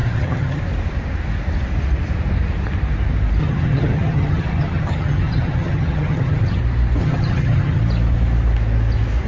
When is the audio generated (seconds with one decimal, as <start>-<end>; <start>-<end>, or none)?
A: 0.0-0.6; 3.4-6.6; 7.0-7.8